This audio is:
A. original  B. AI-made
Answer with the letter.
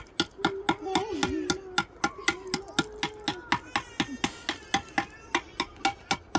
A